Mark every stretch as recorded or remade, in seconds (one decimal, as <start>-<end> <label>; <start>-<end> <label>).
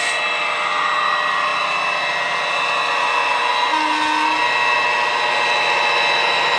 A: 0.0-6.6 recorded